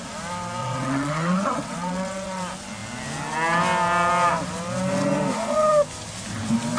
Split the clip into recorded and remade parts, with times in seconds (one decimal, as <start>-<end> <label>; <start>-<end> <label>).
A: 0.0-0.6 recorded; 0.6-2.4 remade; 2.4-6.8 recorded